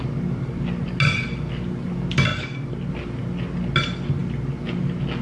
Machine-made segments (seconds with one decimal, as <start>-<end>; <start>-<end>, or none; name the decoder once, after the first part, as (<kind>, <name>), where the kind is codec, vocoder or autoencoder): none